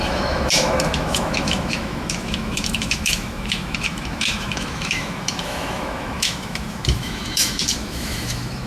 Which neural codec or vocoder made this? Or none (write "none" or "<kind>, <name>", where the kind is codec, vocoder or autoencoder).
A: autoencoder, DAC-VAE